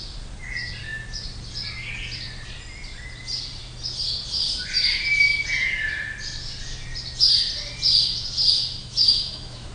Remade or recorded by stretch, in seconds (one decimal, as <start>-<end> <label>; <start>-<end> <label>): 0.0-8.8 recorded; 8.8-9.7 remade